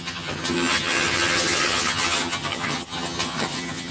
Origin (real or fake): fake